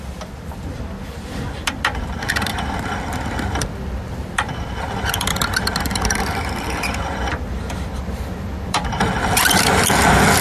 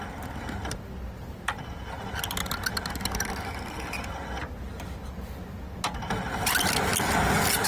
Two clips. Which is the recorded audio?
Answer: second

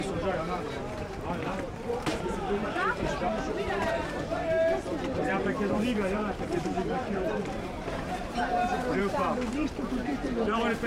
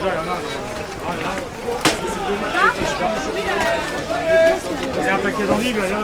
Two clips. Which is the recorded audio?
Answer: second